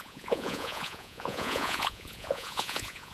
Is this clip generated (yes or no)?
yes